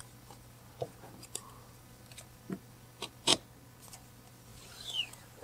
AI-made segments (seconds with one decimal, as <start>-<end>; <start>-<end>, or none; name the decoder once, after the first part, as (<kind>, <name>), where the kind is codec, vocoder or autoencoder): 0.0-3.3 (vocoder, BigVGAN v2); 3.9-4.5